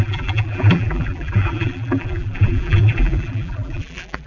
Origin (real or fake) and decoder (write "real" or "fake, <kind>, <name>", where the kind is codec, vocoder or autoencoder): fake, vocoder, BigVGAN v2